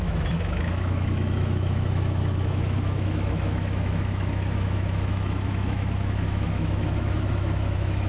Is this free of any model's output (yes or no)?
no